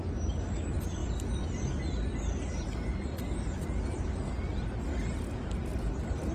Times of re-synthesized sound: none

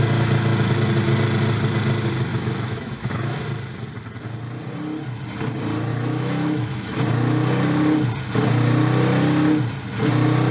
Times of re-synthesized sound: 2.3-3.4 (autoencoder, DAC-VAE); 5.9-7.0

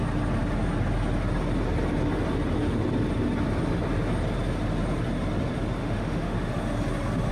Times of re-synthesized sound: 5.8-6.5 (autoencoder, DAC-VAE)

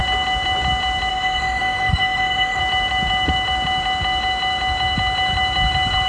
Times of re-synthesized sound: 1.1-2.6 (autoencoder, DAC-VAE)

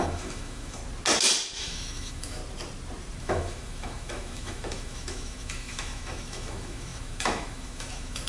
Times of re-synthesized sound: 0.0-0.8 (autoencoder, DAC-VAE); 1.6-2.4; 3.2-8.3

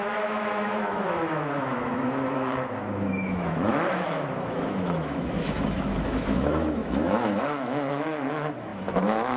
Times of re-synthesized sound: 0.0-9.4 (autoencoder, DAC-VAE)

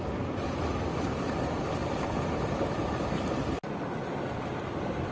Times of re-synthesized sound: none